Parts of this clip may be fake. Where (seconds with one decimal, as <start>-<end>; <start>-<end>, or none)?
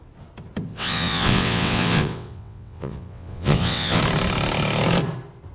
0.7-4.0